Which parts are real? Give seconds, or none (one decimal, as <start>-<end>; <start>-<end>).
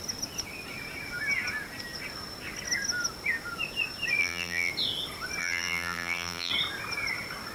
0.0-4.2; 4.7-5.4; 6.5-7.5